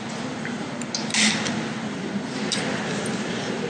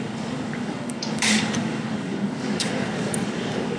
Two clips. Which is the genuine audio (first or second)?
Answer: first